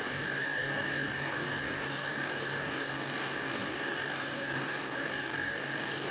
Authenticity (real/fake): fake